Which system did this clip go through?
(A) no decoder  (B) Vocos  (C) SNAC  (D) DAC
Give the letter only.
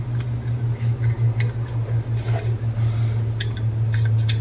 A